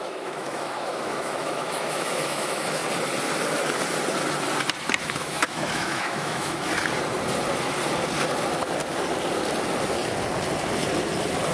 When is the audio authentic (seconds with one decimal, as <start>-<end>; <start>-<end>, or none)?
2.8-5.0; 6.7-11.5